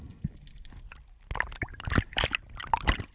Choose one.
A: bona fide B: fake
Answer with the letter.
A